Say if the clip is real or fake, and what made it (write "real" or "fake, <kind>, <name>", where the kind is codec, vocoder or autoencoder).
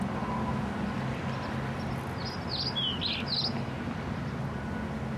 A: real